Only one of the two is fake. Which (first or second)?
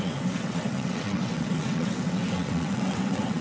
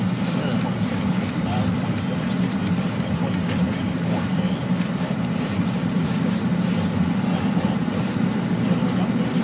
first